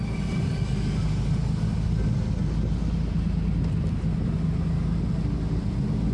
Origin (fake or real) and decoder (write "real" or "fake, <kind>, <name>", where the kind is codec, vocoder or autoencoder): real